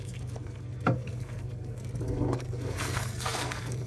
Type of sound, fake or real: fake